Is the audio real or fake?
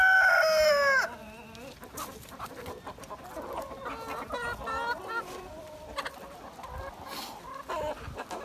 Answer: real